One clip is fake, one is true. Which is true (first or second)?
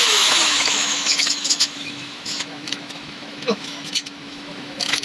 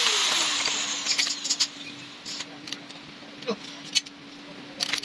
second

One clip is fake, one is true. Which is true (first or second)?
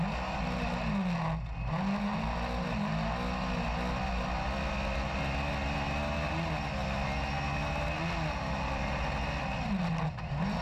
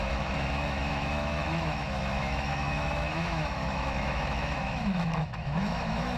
first